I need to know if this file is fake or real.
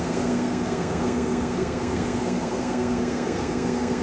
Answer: fake